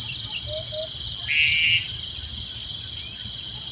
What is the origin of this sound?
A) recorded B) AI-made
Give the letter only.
A